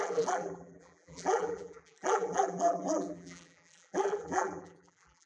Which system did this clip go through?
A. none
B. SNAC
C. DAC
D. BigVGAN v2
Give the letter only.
D